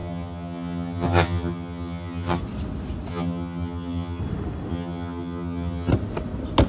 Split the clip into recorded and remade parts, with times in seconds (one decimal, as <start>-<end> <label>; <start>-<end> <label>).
0.0-2.4 remade; 2.4-3.1 recorded; 3.1-4.2 remade; 4.2-4.7 recorded; 4.7-5.9 remade; 5.9-6.7 recorded